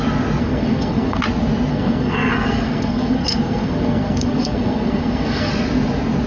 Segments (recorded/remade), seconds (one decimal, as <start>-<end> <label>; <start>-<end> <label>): 0.0-0.4 recorded; 0.4-1.2 remade; 1.2-1.7 recorded; 1.7-5.5 remade; 5.5-6.3 recorded